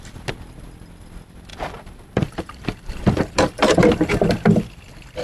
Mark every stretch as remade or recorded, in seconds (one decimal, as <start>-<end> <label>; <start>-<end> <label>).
0.0-1.5 recorded; 1.5-4.6 remade; 4.6-5.2 recorded